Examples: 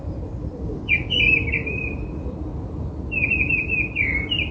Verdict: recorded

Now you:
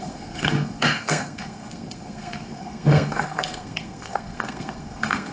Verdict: remade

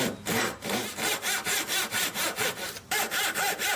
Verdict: remade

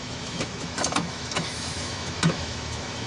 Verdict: remade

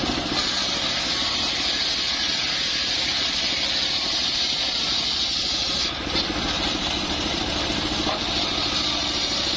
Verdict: recorded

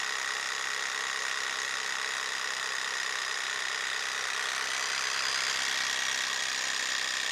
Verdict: recorded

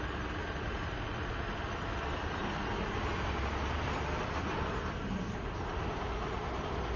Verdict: recorded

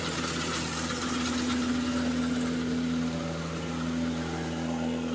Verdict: recorded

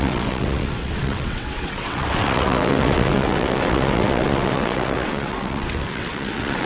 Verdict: remade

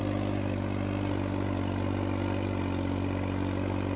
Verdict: recorded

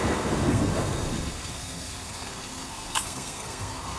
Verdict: remade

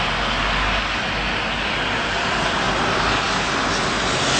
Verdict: recorded